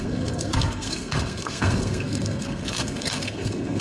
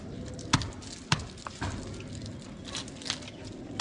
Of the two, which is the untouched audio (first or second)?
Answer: second